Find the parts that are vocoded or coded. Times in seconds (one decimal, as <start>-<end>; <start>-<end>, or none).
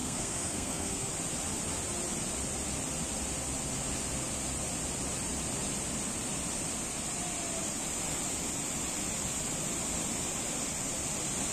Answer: 0.0-1.1